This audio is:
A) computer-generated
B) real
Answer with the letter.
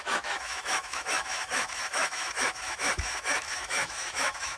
A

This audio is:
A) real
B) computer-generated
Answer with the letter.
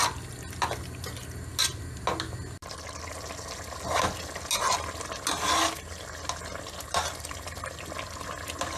A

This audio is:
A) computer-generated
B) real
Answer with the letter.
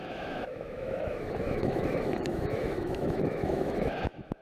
A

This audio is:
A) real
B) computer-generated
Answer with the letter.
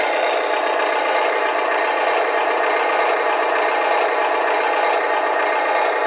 A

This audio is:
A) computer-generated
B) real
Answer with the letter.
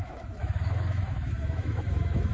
A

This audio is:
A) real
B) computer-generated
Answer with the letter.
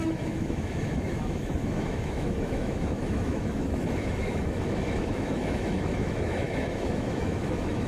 B